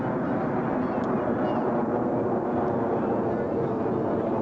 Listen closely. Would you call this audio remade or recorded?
recorded